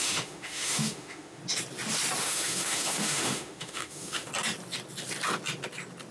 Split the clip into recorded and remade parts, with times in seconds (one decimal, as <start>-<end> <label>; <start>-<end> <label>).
0.0-1.4 remade; 1.4-2.2 recorded; 2.2-4.3 remade; 4.3-6.1 recorded